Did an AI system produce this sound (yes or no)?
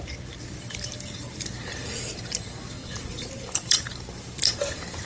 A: yes